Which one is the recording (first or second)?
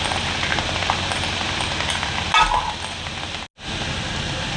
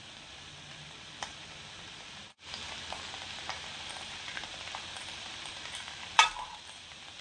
first